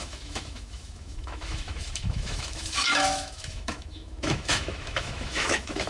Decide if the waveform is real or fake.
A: fake